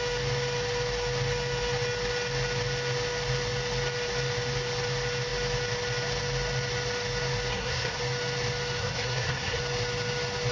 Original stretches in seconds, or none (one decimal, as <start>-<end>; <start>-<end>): 0.0-7.5; 8.0-8.8; 9.6-10.5